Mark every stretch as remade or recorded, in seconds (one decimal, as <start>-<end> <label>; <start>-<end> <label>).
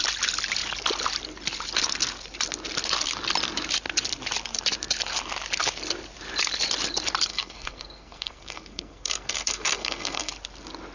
0.0-7.3 recorded; 7.3-10.3 remade; 10.3-10.9 recorded